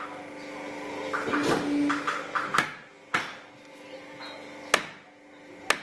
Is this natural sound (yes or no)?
yes